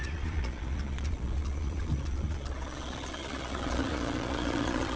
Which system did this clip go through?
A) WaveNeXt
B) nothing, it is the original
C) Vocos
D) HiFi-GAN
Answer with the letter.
C